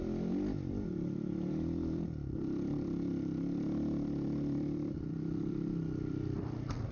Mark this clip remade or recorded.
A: remade